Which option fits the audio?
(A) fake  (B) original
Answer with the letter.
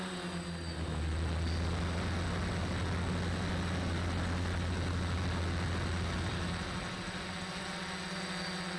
B